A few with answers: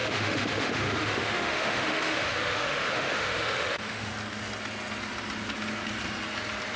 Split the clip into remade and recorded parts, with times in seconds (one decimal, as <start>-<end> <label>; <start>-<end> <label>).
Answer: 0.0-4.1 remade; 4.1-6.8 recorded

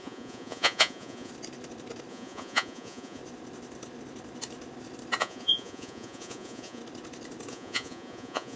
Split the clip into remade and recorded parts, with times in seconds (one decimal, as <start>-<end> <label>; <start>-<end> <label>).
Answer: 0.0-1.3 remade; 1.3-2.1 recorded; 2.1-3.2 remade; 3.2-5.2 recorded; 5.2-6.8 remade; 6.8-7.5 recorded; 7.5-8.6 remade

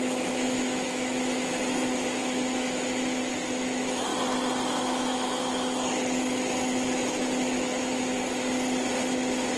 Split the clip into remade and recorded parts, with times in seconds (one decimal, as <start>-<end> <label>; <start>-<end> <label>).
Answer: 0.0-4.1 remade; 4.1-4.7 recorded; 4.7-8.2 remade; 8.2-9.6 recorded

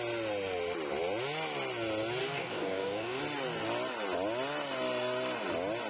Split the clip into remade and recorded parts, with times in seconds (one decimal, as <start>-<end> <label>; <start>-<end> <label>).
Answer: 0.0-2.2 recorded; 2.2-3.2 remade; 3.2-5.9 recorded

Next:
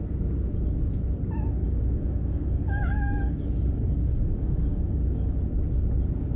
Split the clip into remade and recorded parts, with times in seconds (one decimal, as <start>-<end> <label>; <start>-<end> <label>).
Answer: 0.0-1.6 recorded; 1.6-5.4 remade; 5.4-6.4 recorded